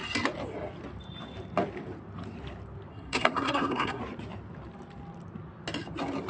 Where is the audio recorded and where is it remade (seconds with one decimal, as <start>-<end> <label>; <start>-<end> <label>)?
0.0-2.9 recorded; 2.9-4.0 remade; 4.0-6.3 recorded